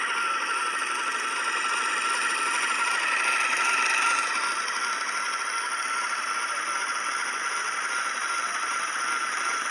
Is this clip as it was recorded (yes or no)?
yes